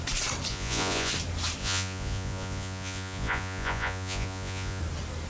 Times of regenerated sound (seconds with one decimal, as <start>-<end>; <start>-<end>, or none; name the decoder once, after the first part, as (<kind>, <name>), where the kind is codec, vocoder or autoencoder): 0.5-1.1 (vocoder, Vocos); 1.6-4.8